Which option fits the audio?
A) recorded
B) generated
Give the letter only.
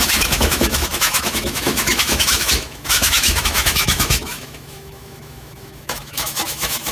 B